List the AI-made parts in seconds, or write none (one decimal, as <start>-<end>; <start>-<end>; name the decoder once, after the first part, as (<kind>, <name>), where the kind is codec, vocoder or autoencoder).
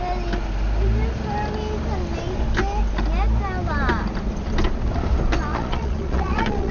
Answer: 5.5-6.7 (vocoder, Vocos)